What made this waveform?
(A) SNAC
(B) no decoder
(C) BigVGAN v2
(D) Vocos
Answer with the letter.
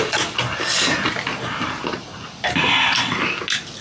B